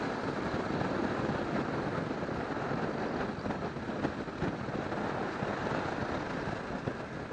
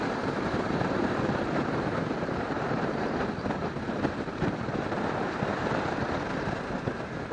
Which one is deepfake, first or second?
second